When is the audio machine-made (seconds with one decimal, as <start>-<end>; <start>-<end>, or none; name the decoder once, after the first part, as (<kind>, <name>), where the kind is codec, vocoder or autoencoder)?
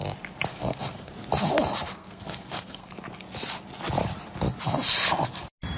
0.5-1.1 (codec, SNAC); 1.9-2.9